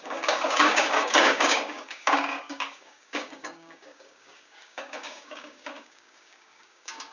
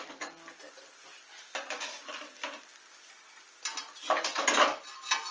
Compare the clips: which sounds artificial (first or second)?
first